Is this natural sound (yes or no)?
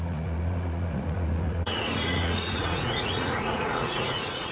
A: no